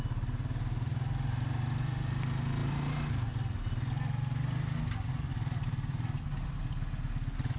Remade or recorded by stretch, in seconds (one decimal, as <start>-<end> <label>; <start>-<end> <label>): 0.0-7.6 recorded